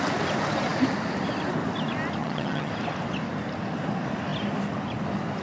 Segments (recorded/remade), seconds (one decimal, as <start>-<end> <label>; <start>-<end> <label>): 0.0-2.2 recorded; 2.2-2.7 remade; 2.7-5.4 recorded